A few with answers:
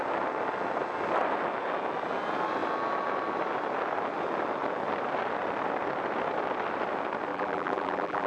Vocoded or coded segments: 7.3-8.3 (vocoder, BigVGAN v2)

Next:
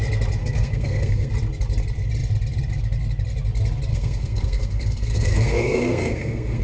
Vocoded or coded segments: 0.4-1.3 (codec, SNAC); 3.9-6.6

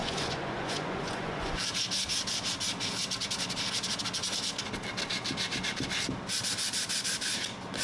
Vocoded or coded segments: 0.0-1.6 (vocoder, Vocos)

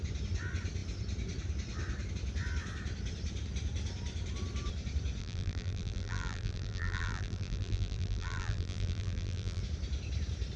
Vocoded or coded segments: 5.2-9.6 (vocoder, BigVGAN v2)

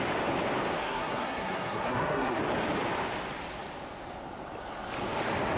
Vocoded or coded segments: 0.8-2.4 (codec, SNAC)

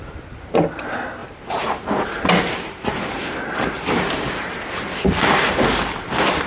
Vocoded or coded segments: none